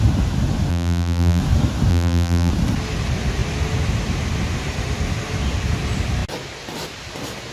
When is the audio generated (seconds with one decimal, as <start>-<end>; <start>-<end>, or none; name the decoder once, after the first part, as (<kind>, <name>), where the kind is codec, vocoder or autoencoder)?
0.7-1.4 (vocoder, BigVGAN v2); 1.9-2.5